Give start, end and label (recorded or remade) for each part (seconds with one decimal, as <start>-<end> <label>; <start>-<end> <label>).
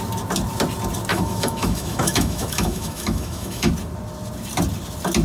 0.0-1.1 recorded; 1.1-3.7 remade; 3.7-5.2 recorded